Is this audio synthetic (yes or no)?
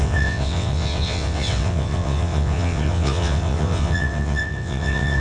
yes